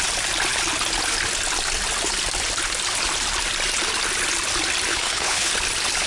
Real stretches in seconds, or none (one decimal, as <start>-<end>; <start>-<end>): 0.0-4.9; 5.5-6.1